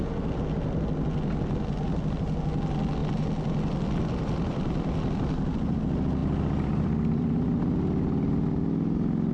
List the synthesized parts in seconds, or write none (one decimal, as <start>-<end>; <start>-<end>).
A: 3.0-5.1; 6.2-7.6